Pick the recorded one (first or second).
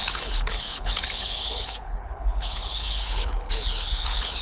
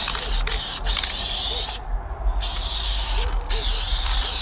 second